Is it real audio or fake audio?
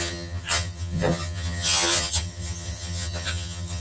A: fake